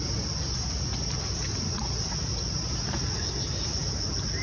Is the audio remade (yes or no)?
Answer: no